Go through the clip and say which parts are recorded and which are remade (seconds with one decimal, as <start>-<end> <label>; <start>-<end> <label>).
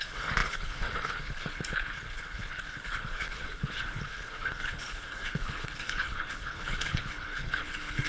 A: 0.0-8.1 remade